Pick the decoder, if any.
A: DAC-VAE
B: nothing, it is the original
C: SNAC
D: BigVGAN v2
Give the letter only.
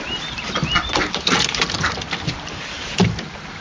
B